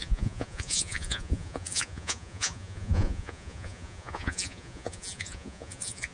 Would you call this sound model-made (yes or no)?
yes